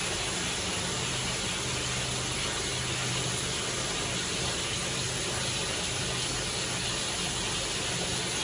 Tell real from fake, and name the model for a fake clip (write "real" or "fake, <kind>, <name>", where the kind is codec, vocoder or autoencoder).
real